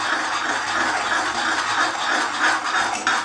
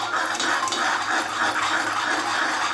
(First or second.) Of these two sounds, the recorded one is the first